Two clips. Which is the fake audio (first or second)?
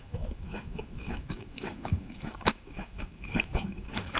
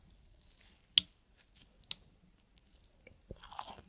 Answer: first